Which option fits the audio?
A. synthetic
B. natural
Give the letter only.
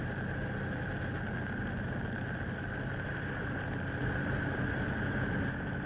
B